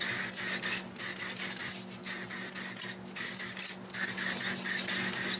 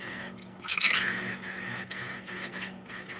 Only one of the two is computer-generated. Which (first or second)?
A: second